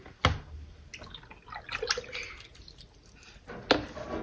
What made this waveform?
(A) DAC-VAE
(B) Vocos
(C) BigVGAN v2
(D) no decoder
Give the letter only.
D